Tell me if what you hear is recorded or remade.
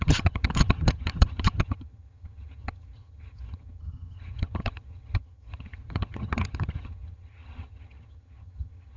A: remade